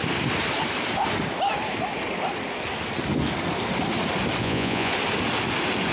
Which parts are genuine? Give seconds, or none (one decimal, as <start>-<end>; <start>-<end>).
0.0-4.4; 4.9-5.9